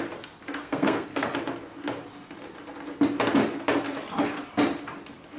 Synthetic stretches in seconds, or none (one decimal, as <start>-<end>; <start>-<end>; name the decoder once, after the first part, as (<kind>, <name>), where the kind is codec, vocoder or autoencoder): 0.6-1.3 (codec, SNAC)

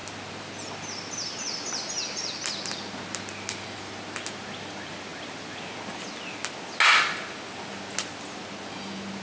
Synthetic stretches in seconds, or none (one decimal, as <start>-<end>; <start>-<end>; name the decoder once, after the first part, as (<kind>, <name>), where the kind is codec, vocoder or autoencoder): none